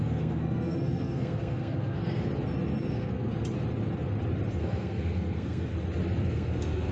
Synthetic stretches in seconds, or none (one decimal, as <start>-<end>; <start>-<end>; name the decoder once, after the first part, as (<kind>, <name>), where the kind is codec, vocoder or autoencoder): 0.0-2.0 (codec, SNAC); 2.9-3.3; 4.5-5.7; 6.2-6.9